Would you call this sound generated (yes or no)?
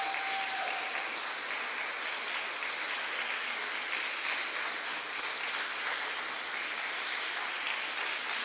no